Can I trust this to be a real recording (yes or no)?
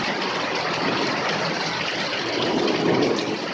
yes